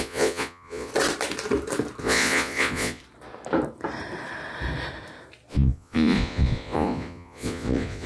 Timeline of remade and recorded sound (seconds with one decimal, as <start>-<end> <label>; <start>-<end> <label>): 0.0-0.9 remade; 0.9-2.0 recorded; 2.0-3.0 remade; 3.0-5.5 recorded; 5.5-8.1 remade